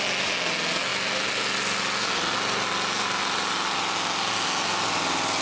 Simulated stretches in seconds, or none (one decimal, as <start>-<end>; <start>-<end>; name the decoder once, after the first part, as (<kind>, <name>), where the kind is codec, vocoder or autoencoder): none